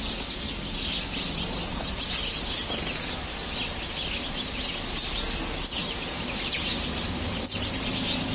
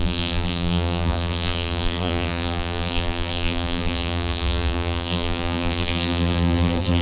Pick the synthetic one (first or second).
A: second